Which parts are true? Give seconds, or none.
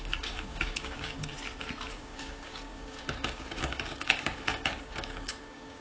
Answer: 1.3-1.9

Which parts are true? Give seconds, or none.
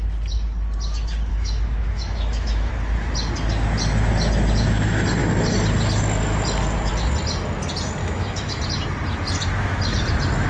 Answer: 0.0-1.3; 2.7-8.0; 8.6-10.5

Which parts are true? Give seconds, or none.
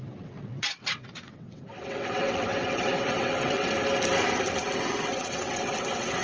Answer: 3.7-4.6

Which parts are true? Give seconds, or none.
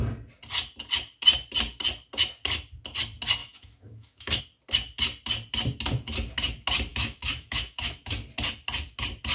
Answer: 0.0-3.4; 4.4-6.9; 8.1-9.3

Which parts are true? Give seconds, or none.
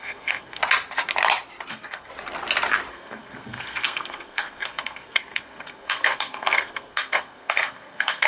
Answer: 0.6-1.7; 2.1-2.9